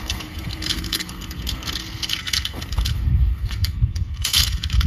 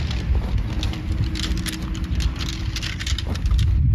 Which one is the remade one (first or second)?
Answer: first